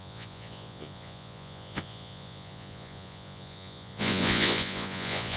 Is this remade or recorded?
remade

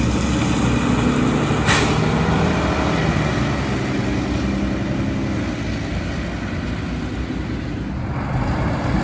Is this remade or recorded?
recorded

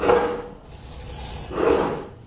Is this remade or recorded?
recorded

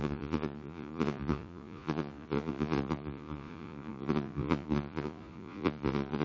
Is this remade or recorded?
remade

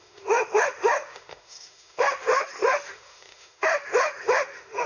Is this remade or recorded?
remade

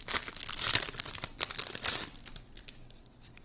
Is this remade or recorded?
remade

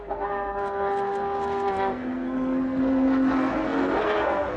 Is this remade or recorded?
remade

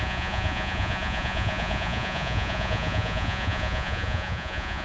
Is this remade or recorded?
remade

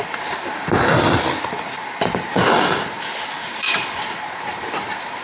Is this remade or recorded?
remade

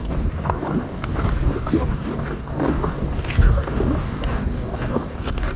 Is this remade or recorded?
remade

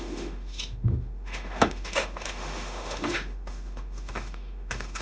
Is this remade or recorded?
remade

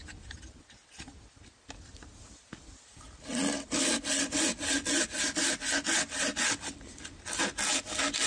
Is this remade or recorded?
recorded